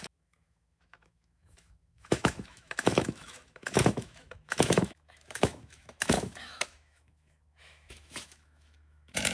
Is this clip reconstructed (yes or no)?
yes